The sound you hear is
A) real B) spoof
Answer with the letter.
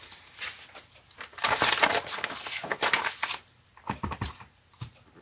A